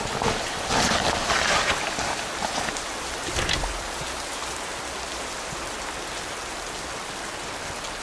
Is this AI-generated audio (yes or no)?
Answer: no